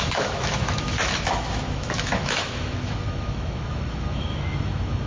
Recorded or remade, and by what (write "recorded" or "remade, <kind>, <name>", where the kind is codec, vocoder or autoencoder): remade, autoencoder, DAC-VAE